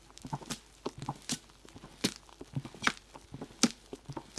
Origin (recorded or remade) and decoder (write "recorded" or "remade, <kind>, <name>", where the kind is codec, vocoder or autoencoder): recorded